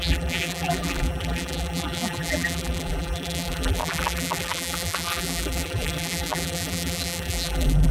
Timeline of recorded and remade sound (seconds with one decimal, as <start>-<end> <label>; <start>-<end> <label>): 0.0-7.9 remade

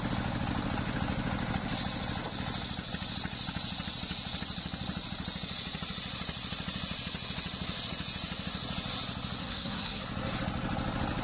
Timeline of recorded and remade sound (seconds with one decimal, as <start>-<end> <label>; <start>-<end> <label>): 0.0-9.4 recorded; 9.4-10.0 remade; 10.0-11.2 recorded

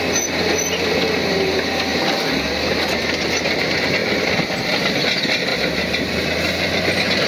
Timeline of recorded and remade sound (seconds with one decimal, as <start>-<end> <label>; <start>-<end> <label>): 0.0-4.0 recorded; 4.0-5.0 remade; 5.0-5.5 recorded; 5.5-6.1 remade; 6.1-7.3 recorded

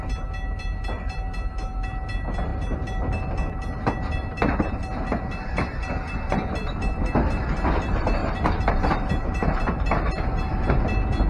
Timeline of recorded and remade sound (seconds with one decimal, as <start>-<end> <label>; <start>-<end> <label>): 0.0-8.2 recorded; 8.2-8.7 remade; 8.7-11.3 recorded

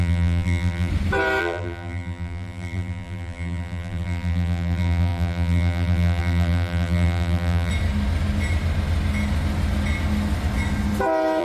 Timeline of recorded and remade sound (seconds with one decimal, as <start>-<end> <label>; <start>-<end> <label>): 0.0-0.9 remade; 0.9-1.4 recorded; 1.4-7.7 remade; 7.7-11.4 recorded

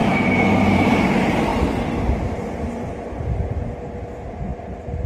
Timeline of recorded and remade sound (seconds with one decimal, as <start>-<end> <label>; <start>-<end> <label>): 0.0-1.0 remade; 1.0-5.1 recorded

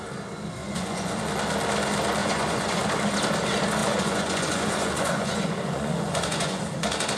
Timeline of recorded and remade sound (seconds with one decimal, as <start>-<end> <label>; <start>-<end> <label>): 0.0-0.6 recorded; 0.6-1.2 remade; 1.2-2.2 recorded; 2.2-2.8 remade; 2.8-3.8 recorded; 3.8-6.6 remade; 6.6-7.2 recorded